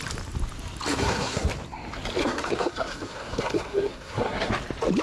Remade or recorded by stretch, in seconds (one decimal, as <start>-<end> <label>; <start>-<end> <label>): 0.0-0.9 recorded; 0.9-1.5 remade; 1.5-2.2 recorded; 2.2-4.5 remade; 4.5-5.0 recorded